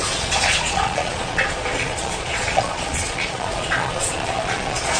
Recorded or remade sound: remade